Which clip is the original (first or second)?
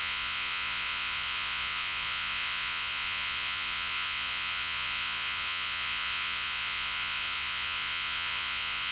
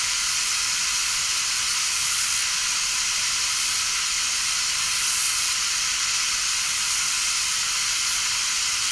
second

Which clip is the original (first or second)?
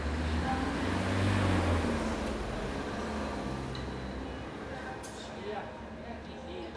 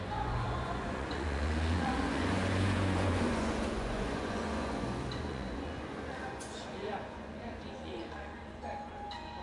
first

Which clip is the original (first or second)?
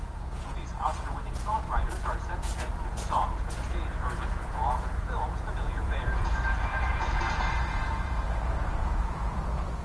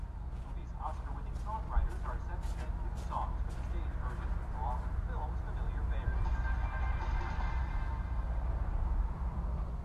second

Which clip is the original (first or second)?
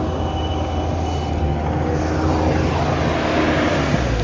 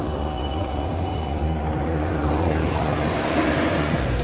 first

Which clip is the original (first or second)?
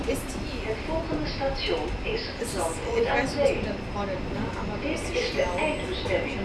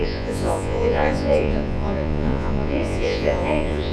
first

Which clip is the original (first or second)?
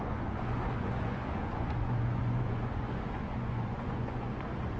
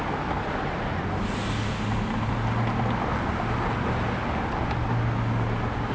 second